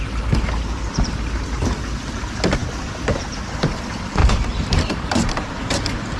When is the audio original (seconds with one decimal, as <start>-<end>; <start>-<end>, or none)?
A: 0.0-4.2; 5.8-6.2